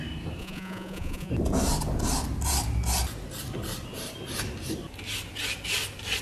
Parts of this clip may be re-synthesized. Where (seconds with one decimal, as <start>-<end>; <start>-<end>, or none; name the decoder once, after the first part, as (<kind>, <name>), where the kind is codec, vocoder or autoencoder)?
0.4-1.3 (vocoder, Vocos)